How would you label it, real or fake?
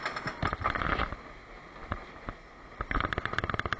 real